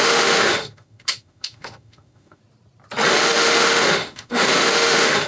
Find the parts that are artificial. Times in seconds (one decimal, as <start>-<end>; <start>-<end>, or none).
0.0-2.4; 3.1-5.3